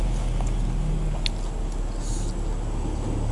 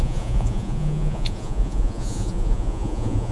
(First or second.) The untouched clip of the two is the first